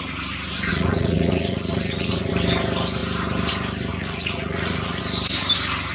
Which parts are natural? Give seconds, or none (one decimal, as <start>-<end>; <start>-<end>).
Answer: 0.0-0.7; 2.3-3.9; 5.0-5.9